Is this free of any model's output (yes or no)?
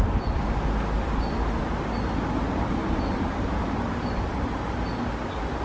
yes